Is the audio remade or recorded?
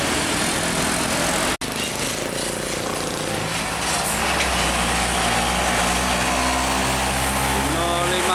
recorded